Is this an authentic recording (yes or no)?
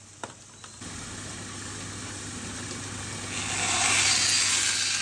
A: yes